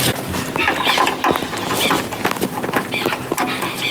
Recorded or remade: recorded